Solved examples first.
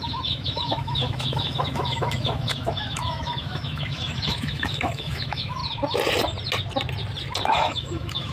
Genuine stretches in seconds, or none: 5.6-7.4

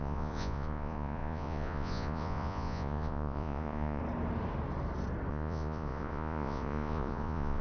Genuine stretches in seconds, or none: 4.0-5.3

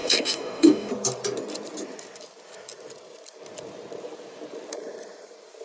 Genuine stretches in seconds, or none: 0.9-5.6